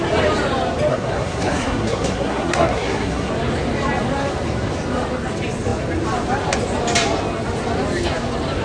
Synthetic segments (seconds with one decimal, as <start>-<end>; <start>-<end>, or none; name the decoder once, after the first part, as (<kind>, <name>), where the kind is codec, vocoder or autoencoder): 0.9-3.3 (codec, SNAC)